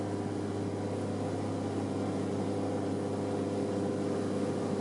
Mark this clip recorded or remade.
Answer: recorded